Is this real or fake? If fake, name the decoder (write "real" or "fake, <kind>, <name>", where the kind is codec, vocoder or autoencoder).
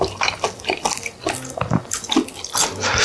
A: real